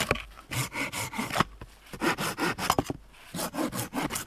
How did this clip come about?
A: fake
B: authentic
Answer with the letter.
B